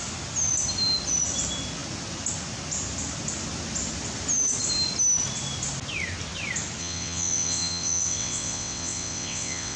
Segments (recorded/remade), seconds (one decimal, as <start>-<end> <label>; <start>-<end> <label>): 0.0-6.8 recorded; 6.8-9.8 remade